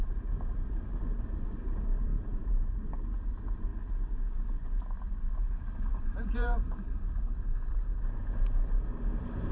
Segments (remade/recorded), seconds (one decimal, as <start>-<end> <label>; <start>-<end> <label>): 0.0-3.7 remade; 3.7-4.8 recorded; 4.8-9.5 remade